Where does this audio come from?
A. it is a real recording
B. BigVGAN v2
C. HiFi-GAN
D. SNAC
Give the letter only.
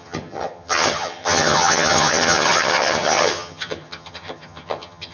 C